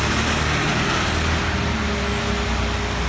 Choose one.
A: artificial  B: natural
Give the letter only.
B